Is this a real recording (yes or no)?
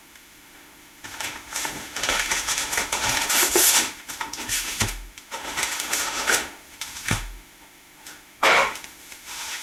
no